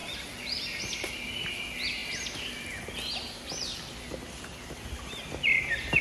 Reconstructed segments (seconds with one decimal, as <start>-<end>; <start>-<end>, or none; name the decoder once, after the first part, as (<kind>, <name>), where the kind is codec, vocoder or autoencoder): 0.0-0.8 (vocoder, BigVGAN v2)